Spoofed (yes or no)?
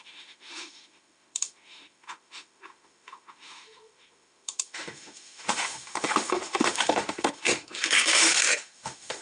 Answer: yes